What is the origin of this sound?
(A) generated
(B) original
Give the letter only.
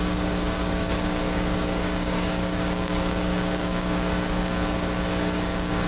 A